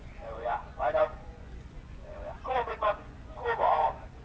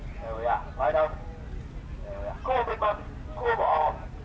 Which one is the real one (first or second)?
second